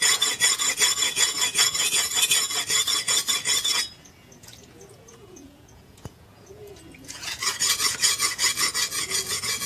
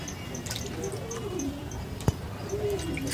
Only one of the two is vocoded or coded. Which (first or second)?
first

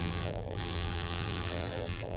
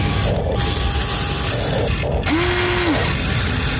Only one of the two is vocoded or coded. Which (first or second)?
first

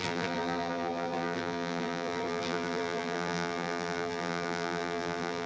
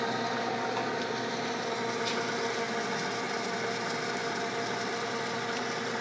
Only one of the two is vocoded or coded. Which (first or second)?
first